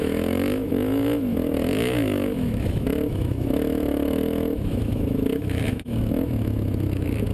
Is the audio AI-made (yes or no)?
yes